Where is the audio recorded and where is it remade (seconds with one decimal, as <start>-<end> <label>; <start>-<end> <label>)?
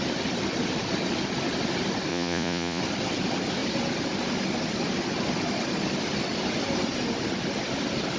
0.0-2.1 recorded; 2.1-2.8 remade; 2.8-8.2 recorded